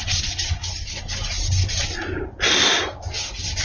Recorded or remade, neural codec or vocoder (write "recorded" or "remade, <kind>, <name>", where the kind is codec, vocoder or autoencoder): recorded